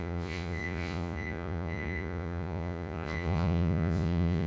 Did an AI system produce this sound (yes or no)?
yes